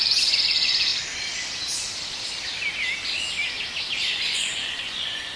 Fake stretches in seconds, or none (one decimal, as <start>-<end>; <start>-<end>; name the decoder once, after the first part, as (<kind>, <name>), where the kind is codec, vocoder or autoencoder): 0.0-0.9 (vocoder, Vocos); 4.1-5.4